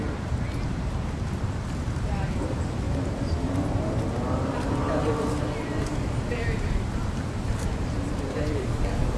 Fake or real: fake